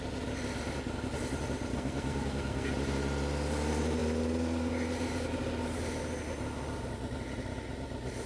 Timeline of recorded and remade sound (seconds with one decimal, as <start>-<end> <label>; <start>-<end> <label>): 0.0-1.7 recorded; 1.7-2.7 remade; 2.7-8.3 recorded